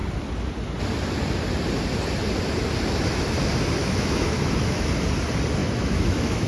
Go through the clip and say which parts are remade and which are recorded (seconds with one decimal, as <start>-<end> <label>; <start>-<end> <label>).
0.0-3.8 recorded; 3.8-4.9 remade; 4.9-5.6 recorded; 5.6-6.5 remade